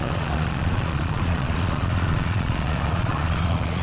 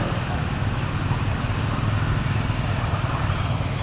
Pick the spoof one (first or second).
first